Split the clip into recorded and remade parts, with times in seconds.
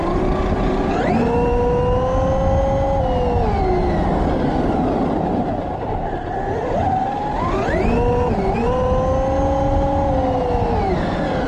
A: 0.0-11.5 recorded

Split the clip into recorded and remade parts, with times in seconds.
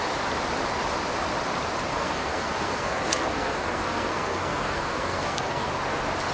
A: 0.0-1.9 recorded; 1.9-5.7 remade; 5.7-6.3 recorded